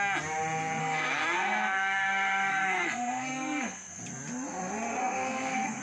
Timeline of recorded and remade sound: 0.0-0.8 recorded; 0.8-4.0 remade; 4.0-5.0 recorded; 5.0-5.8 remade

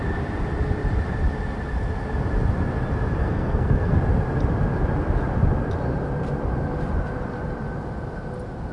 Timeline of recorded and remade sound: 0.0-3.2 recorded; 3.2-4.0 remade; 4.0-8.7 recorded